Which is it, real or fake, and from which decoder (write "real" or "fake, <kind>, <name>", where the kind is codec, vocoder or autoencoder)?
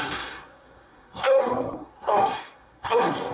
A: fake, codec, SNAC